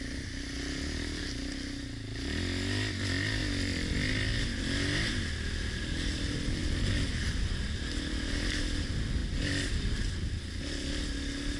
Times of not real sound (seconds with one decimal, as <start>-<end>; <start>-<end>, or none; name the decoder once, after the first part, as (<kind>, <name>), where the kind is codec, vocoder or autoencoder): none